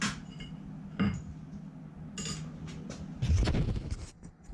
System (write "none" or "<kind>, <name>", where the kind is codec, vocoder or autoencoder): none